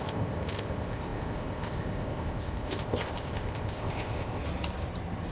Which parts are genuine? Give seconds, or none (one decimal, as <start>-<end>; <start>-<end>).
4.4-5.3